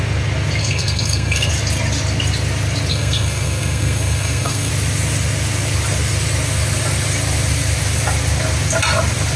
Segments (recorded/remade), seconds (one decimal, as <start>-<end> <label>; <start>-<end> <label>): 0.0-0.6 recorded; 0.6-1.5 remade; 1.5-2.9 recorded; 2.9-4.7 remade; 4.7-9.4 recorded